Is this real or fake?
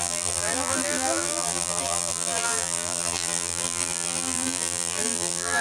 fake